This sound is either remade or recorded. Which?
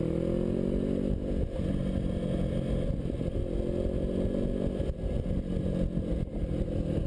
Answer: recorded